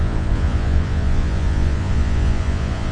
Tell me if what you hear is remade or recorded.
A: remade